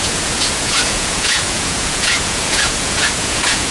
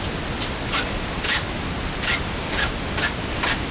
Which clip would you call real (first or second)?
second